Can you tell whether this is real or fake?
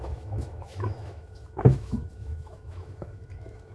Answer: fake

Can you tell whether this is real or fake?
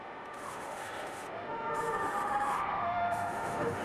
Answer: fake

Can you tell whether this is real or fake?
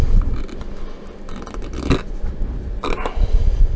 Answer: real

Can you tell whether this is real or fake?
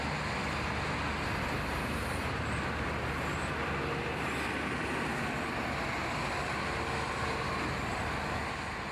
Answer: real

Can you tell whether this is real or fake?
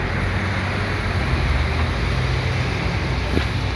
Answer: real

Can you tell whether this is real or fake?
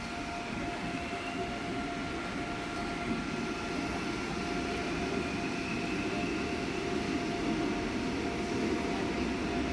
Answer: real